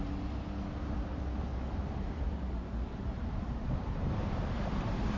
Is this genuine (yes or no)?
yes